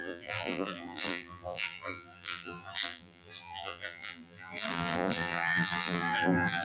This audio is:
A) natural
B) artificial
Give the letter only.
B